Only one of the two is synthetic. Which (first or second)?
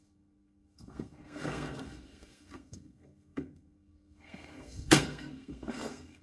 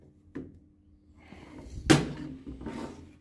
first